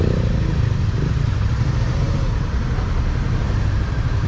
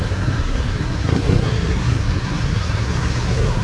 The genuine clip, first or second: first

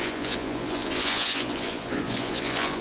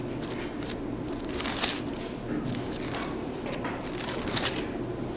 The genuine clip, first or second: second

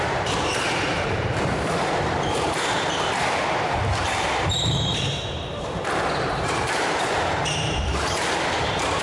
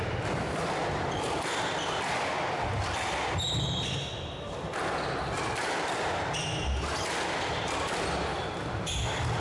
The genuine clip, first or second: second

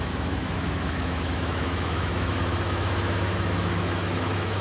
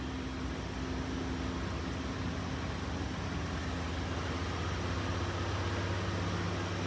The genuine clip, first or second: second